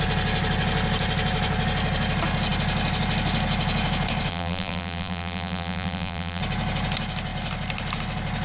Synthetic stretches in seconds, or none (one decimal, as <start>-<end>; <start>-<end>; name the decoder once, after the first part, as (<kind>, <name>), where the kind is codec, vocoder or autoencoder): 4.3-6.4 (vocoder, BigVGAN v2)